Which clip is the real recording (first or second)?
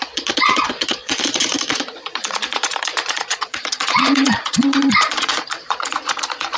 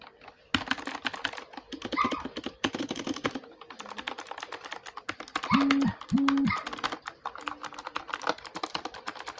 second